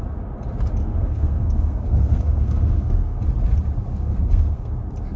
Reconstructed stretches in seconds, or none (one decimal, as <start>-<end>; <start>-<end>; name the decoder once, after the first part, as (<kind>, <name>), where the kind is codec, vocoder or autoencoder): 0.8-3.2 (codec, SNAC); 3.9-4.7